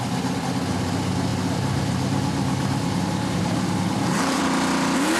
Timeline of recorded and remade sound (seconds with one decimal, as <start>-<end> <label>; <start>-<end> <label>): 0.0-1.3 recorded; 1.3-4.4 remade; 4.4-5.2 recorded